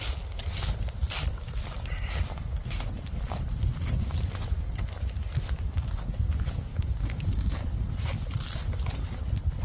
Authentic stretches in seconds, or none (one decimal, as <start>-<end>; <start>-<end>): 0.0-6.7; 7.5-9.6